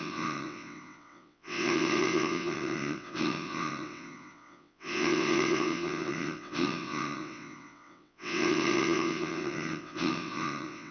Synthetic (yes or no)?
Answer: yes